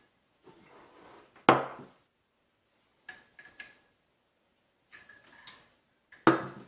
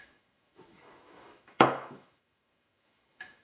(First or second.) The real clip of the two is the first